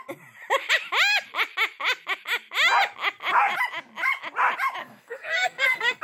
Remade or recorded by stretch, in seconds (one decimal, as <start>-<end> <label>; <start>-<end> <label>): 0.0-4.8 recorded; 4.8-6.0 remade